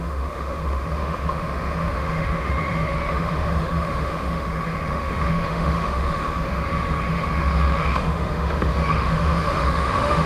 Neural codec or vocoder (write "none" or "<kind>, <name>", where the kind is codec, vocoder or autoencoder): autoencoder, DAC-VAE